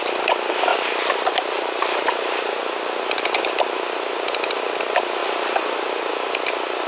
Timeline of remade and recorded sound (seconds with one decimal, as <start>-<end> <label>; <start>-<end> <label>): 0.0-0.7 recorded; 0.7-2.5 remade; 2.5-6.9 recorded